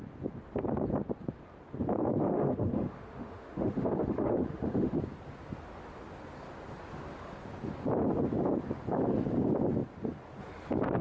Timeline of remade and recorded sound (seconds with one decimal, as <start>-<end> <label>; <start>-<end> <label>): 0.0-2.2 recorded; 2.2-5.0 remade; 5.0-11.0 recorded